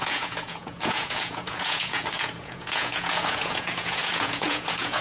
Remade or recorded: remade